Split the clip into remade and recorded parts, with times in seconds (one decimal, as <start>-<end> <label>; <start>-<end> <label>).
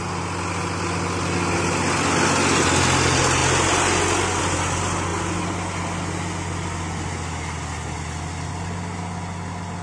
0.0-9.8 recorded